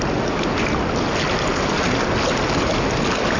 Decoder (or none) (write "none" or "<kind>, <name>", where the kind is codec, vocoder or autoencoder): none